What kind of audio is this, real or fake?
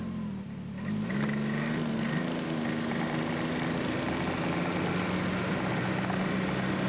real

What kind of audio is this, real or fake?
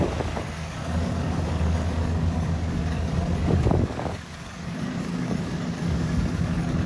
fake